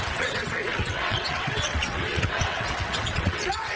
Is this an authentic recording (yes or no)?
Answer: no